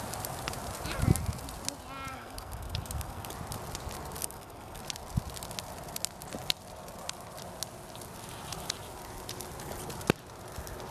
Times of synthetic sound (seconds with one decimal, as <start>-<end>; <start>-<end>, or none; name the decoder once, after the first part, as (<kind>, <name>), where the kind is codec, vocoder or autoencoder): 2.1-3.3 (codec, SNAC); 4.2-4.8

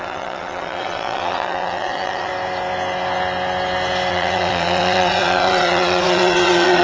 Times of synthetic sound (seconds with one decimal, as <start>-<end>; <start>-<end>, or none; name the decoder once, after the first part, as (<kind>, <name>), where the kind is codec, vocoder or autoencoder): 0.0-2.3 (vocoder, WaveNeXt); 4.1-6.8